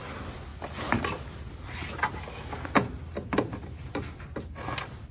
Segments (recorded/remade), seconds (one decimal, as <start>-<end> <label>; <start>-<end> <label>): 0.0-5.1 recorded